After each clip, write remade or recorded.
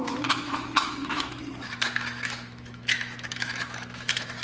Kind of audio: remade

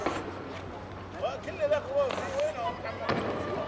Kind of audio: recorded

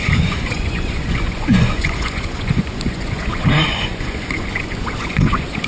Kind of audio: remade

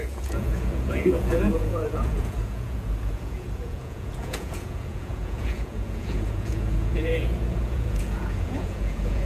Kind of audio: remade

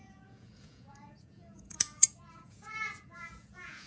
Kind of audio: remade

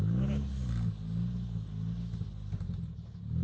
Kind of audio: recorded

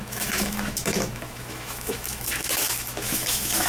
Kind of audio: remade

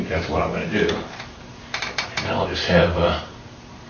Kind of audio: remade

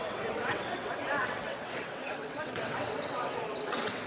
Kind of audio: remade